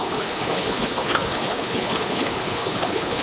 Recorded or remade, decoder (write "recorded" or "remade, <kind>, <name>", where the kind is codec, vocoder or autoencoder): remade, codec, HILCodec